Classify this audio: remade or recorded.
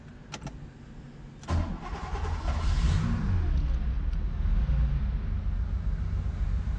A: recorded